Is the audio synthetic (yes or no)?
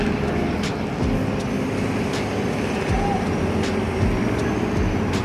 no